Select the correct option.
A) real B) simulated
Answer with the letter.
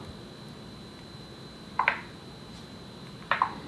A